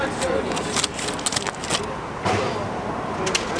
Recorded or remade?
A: recorded